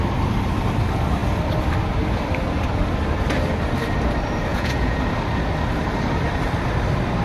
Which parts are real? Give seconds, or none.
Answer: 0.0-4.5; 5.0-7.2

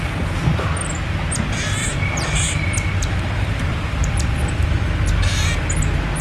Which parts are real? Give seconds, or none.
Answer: 0.0-1.8; 4.8-6.2

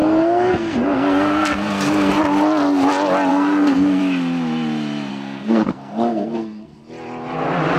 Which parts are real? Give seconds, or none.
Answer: 2.1-3.3; 4.0-5.1; 6.8-7.8